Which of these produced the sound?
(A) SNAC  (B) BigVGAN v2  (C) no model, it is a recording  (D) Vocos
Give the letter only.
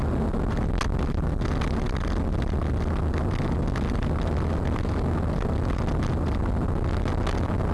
C